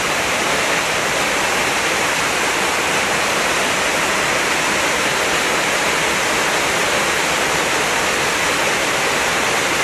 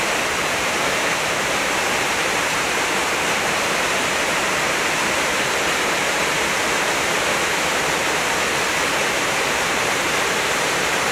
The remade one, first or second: second